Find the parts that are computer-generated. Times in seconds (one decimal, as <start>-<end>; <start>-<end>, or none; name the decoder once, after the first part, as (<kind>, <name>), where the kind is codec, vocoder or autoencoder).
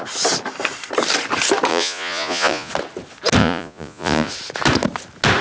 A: 1.7-2.7 (vocoder, Vocos); 3.4-4.3